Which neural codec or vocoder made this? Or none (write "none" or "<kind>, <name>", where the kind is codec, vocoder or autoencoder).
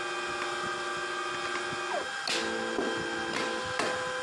none